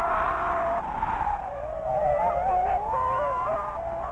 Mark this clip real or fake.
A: real